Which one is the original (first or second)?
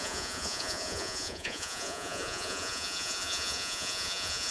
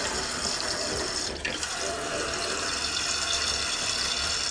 second